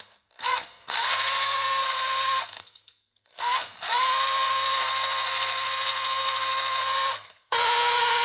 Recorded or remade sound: remade